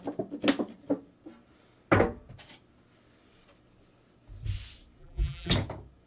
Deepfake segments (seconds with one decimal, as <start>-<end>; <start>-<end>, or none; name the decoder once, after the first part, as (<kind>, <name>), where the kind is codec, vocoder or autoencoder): 5.0-5.5 (vocoder, BigVGAN v2)